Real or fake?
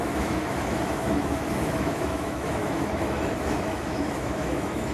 fake